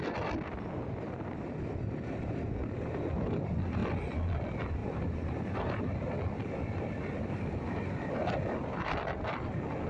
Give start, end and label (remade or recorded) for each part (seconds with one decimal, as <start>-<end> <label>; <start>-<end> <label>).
0.0-4.8 recorded; 4.8-5.8 remade; 5.8-9.9 recorded